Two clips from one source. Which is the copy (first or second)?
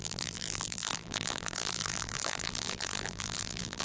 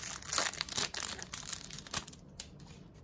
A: first